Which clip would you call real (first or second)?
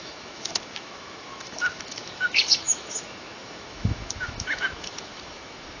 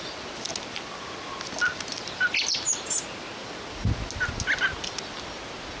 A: second